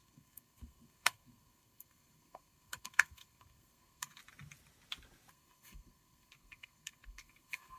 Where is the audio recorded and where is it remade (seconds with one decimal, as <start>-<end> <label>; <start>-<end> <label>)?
0.0-4.2 remade; 4.2-5.3 recorded; 5.3-7.8 remade